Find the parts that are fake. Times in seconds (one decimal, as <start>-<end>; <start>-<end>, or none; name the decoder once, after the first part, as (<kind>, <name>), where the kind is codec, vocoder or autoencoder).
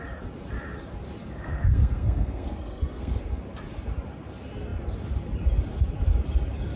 1.3-3.2 (codec, SNAC)